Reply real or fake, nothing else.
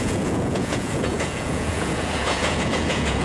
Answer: fake